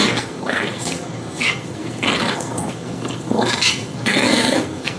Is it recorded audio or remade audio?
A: remade